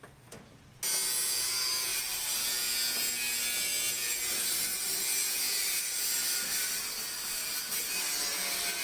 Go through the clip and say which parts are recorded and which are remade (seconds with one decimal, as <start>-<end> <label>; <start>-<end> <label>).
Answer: 0.0-1.9 recorded; 1.9-2.4 remade; 2.4-8.8 recorded

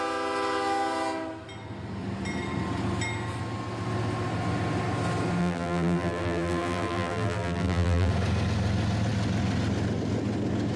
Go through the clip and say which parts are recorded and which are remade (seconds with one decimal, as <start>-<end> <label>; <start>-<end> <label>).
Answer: 0.0-5.4 recorded; 5.4-8.1 remade; 8.1-10.8 recorded

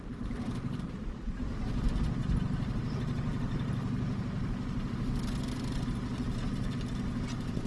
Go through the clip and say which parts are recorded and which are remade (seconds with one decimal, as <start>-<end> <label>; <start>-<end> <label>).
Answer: 0.0-7.7 recorded

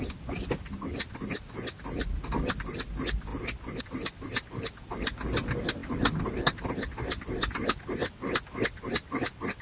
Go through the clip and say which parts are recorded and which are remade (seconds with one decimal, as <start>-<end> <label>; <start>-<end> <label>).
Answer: 0.0-9.6 recorded

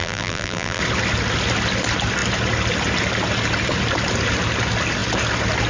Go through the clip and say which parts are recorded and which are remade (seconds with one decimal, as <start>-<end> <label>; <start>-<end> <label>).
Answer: 0.0-0.8 remade; 0.8-5.7 recorded

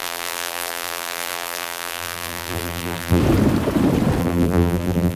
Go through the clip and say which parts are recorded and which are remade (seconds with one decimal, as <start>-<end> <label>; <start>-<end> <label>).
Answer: 0.0-3.2 remade; 3.2-4.2 recorded; 4.2-5.2 remade